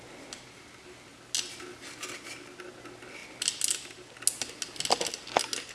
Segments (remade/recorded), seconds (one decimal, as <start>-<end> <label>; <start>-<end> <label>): 0.0-5.7 recorded